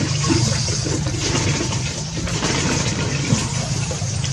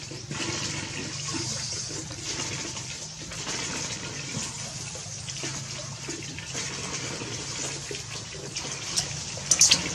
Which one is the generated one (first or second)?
first